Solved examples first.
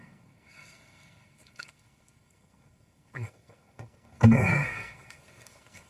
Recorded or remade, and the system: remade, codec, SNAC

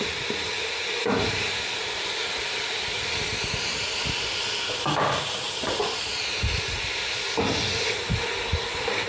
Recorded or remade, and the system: recorded